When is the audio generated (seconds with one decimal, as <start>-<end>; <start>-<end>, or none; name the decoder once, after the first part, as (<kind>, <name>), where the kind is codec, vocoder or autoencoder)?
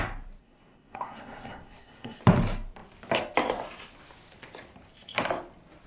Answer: 0.4-2.2 (codec, SNAC)